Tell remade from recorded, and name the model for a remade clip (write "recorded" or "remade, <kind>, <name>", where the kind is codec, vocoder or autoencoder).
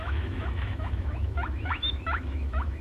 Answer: remade, autoencoder, DAC-VAE